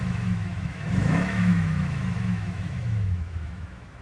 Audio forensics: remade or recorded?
remade